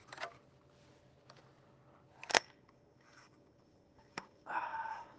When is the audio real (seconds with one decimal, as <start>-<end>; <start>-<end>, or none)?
0.0-2.3